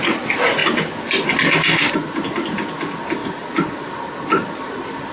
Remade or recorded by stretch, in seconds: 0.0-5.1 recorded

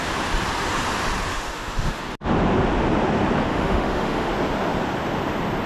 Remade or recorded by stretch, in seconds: 0.0-1.3 recorded; 1.3-2.0 remade; 2.0-3.5 recorded; 3.5-4.3 remade; 4.3-5.7 recorded

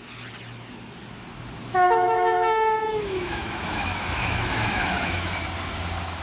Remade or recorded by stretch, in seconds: 0.0-1.6 recorded; 1.6-5.3 remade; 5.3-6.2 recorded

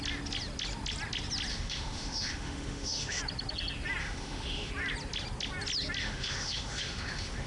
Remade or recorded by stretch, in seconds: 0.0-1.5 recorded; 1.5-3.2 remade; 3.2-4.0 recorded; 4.0-4.7 remade; 4.7-6.0 recorded; 6.0-7.5 remade

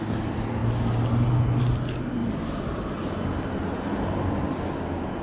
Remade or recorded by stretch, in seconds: 0.0-5.2 recorded

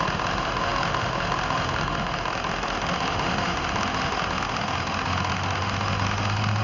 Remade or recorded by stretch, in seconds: 0.0-6.6 remade

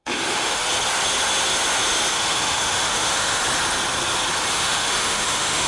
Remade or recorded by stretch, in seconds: 0.0-0.6 remade; 0.6-2.1 recorded; 2.1-3.4 remade; 3.4-4.5 recorded; 4.5-5.7 remade

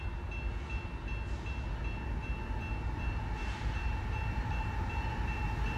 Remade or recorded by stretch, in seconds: 0.0-5.8 recorded